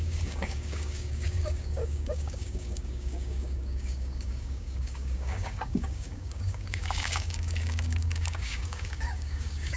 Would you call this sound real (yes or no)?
no